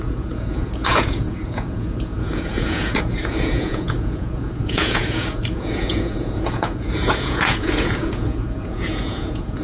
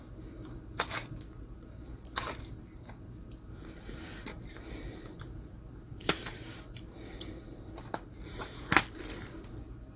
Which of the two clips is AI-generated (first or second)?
first